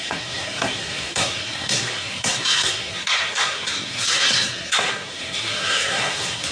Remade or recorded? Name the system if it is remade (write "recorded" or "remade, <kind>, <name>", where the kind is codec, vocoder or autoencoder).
remade, codec, SNAC